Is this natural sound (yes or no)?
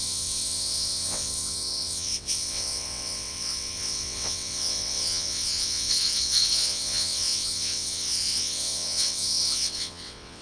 no